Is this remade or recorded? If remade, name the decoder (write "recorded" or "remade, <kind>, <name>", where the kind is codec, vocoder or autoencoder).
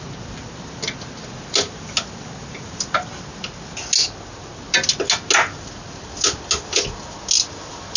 recorded